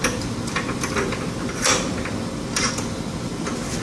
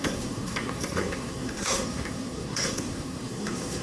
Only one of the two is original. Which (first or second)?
first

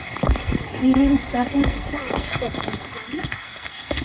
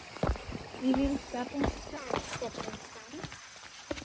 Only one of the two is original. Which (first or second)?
second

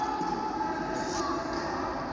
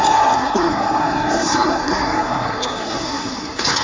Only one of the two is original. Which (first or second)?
first